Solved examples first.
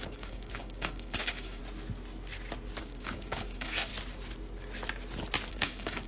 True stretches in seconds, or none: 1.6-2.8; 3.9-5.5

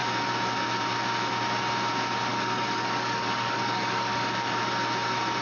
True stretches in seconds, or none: 0.0-2.3; 4.6-5.4